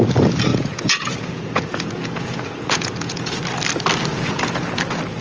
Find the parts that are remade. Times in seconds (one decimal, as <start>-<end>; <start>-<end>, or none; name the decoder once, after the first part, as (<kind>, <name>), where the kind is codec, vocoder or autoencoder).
0.5-3.4 (vocoder, Vocos); 4.1-4.8